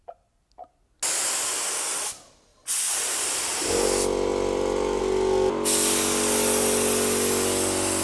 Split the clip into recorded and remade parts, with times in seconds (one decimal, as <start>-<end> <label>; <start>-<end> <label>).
0.0-2.5 recorded; 2.5-3.6 remade; 3.6-4.3 recorded; 4.3-5.0 remade; 5.0-8.0 recorded